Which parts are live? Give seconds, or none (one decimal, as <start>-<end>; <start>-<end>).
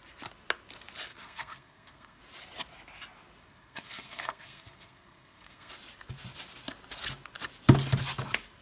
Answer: 0.0-1.1; 2.2-3.4; 5.7-8.6